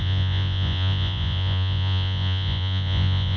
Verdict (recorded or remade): remade